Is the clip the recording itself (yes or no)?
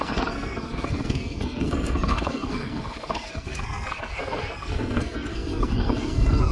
no